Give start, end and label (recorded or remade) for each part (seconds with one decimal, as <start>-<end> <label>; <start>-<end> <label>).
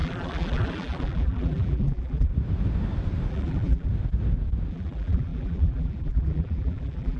0.0-2.3 remade; 2.3-3.3 recorded; 3.3-3.9 remade; 3.9-4.7 recorded; 4.7-7.2 remade